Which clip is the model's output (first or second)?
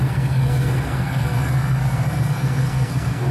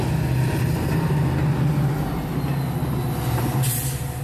first